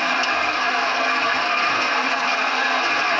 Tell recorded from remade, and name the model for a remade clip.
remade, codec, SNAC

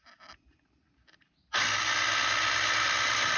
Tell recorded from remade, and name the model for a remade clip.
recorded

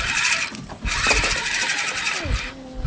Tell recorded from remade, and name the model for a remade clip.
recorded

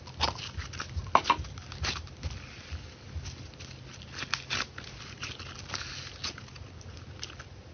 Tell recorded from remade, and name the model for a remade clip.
recorded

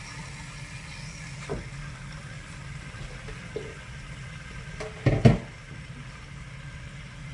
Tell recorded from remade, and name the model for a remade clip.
recorded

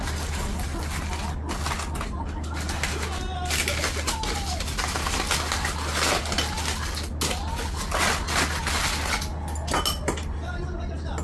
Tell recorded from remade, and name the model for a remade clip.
recorded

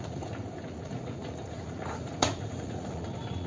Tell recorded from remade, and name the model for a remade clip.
remade, vocoder, Vocos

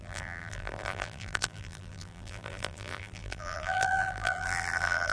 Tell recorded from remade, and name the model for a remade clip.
remade, vocoder, BigVGAN v2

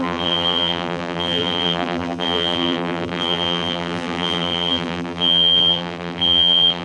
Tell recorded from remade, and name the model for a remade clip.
remade, vocoder, BigVGAN v2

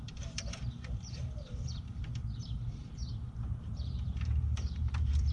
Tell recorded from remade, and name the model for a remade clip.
remade, vocoder, BigVGAN v2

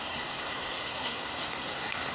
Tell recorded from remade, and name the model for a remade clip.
remade, codec, SNAC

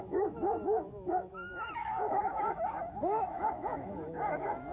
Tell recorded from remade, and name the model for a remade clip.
remade, autoencoder, DAC-VAE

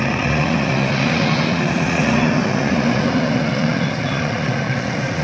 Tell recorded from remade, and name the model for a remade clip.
remade, vocoder, Vocos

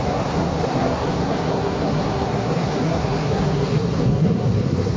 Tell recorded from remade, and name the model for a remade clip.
remade, codec, SNAC